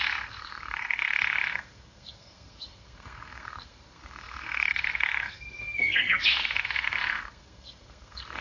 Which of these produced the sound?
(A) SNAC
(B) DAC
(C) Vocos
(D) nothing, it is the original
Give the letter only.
A